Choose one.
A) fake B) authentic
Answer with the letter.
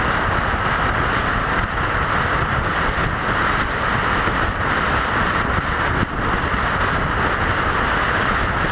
B